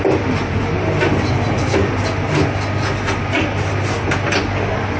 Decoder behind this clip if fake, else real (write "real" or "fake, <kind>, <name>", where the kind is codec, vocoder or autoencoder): real